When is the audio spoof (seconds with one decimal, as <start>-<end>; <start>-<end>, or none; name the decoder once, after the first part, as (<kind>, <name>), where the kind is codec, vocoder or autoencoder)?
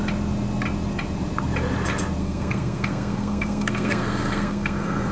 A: 2.2-5.1 (codec, SNAC)